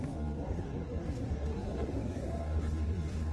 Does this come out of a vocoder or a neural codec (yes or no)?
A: yes